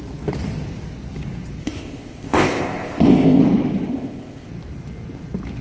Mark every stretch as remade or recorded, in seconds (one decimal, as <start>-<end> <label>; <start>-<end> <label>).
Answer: 0.0-1.6 recorded; 1.6-3.4 remade; 3.4-3.9 recorded; 3.9-4.5 remade; 4.5-5.6 recorded